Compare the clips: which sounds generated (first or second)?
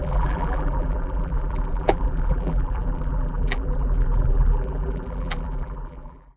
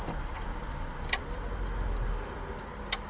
first